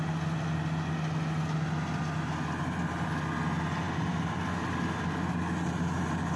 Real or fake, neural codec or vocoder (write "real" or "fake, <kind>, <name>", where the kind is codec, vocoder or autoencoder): real